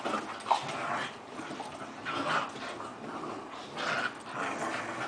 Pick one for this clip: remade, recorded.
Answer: recorded